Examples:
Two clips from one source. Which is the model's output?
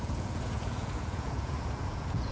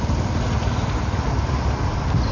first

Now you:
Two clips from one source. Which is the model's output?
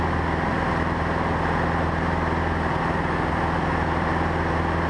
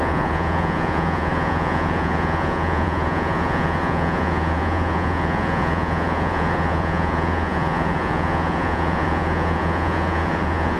second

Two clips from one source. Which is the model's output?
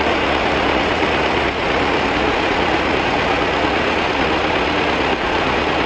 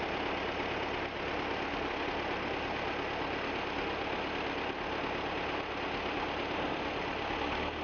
first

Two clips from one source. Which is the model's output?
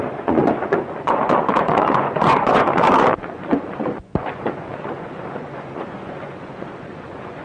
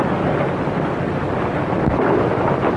first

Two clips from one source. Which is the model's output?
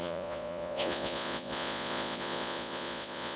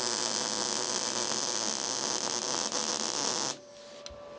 first